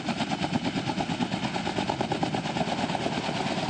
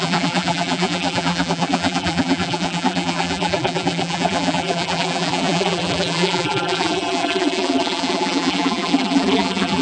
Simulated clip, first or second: second